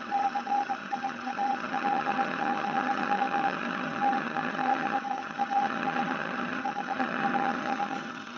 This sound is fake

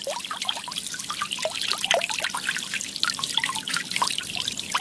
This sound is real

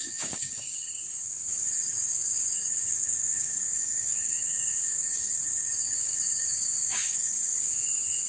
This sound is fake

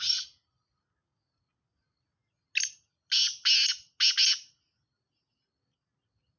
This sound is real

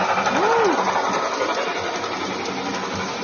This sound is real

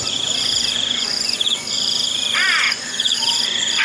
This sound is fake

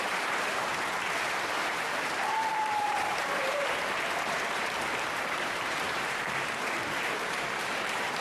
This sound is fake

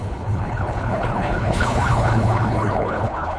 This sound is fake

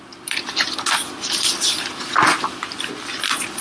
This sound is real